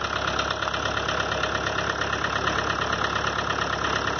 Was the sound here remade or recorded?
recorded